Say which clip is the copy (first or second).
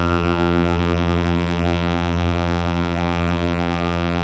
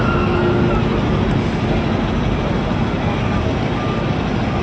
first